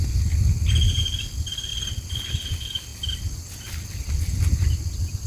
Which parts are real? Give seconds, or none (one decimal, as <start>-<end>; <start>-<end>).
0.0-5.3